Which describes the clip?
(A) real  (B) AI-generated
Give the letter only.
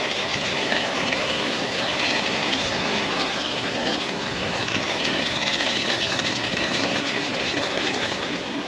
B